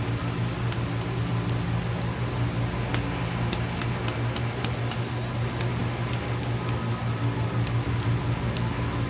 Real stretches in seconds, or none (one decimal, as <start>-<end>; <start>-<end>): 0.0-9.1